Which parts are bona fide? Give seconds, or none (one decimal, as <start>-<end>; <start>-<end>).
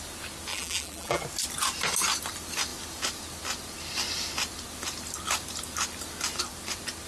0.0-0.5; 1.2-7.1